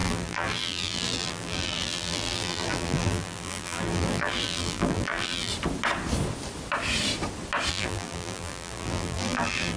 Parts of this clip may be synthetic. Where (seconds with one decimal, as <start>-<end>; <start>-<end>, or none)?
0.0-5.5; 7.7-9.8